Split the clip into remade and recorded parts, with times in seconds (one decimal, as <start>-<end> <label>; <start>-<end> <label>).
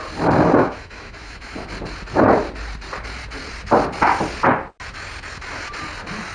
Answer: 0.0-0.6 recorded; 0.6-1.7 remade; 1.7-6.3 recorded